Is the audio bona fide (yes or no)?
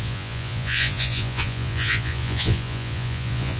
no